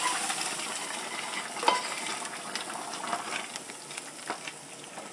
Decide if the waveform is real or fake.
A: real